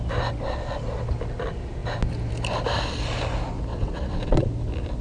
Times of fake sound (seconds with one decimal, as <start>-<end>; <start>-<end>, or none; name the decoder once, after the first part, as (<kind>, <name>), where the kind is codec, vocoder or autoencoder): 3.7-4.5 (vocoder, WaveNeXt)